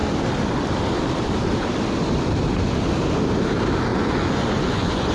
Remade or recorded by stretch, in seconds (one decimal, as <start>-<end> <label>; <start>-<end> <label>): 0.0-3.9 recorded; 3.9-5.1 remade